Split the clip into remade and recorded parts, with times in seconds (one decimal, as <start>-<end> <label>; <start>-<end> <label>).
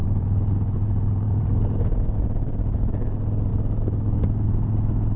0.0-1.9 remade; 1.9-5.2 recorded